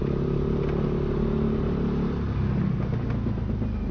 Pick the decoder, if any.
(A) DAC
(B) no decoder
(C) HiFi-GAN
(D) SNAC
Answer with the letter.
B